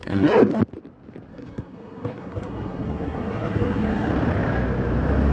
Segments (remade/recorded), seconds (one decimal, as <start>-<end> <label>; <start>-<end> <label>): 0.0-0.6 remade; 0.6-1.3 recorded; 1.3-4.1 remade; 4.1-5.3 recorded